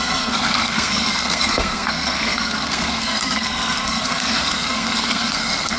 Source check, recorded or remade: remade